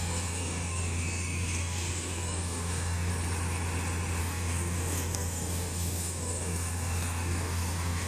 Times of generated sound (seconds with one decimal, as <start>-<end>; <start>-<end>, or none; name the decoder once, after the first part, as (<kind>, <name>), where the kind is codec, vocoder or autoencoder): 0.0-3.1 (codec, DAC); 4.2-8.1